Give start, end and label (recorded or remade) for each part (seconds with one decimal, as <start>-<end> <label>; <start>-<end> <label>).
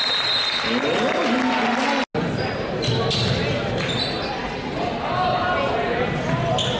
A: 0.0-6.8 recorded